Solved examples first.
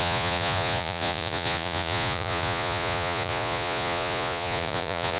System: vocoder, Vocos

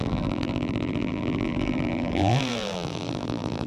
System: vocoder, BigVGAN v2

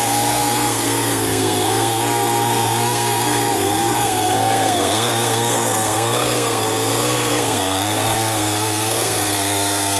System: codec, SNAC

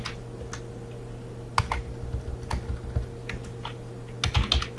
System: none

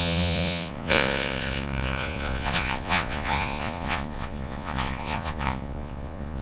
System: vocoder, Vocos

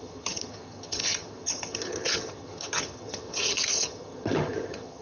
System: vocoder, HiFi-GAN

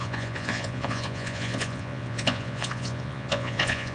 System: vocoder, Vocos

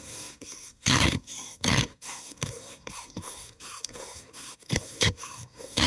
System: codec, SNAC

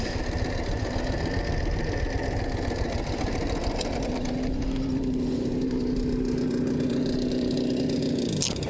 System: none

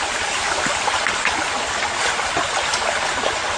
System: none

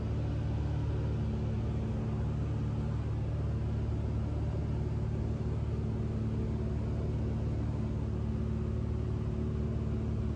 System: none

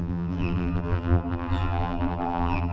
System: vocoder, BigVGAN v2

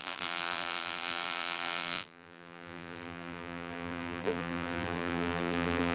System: vocoder, BigVGAN v2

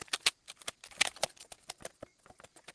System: none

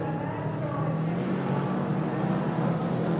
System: none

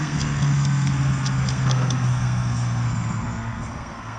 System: codec, SNAC